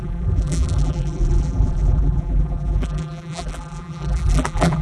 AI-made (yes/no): yes